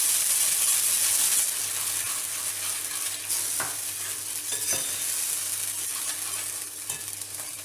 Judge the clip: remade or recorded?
recorded